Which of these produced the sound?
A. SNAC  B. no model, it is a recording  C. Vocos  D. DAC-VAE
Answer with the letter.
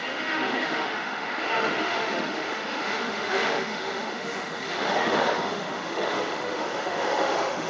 D